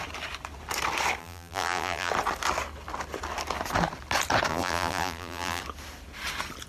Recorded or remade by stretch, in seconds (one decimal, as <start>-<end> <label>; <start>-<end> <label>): 0.0-1.2 recorded; 1.2-2.1 remade; 2.1-4.5 recorded; 4.5-5.6 remade; 5.6-6.7 recorded